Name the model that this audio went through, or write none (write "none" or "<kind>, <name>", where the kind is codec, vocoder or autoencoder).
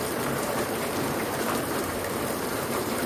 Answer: vocoder, BigVGAN v2